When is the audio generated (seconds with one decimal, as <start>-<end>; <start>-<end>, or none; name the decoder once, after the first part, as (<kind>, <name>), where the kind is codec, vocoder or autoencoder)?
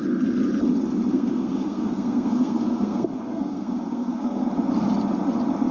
1.1-4.5 (codec, SNAC)